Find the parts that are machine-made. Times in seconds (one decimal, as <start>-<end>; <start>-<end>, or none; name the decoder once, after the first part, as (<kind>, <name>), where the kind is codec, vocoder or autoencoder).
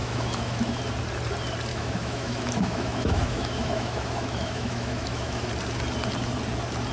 0.0-0.8 (autoencoder, DAC-VAE); 1.7-5.5